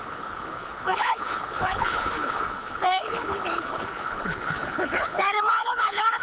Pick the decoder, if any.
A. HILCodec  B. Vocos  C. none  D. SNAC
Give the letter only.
A